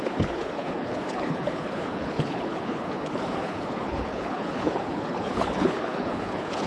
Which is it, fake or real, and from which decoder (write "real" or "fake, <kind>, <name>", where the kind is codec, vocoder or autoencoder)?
fake, codec, HILCodec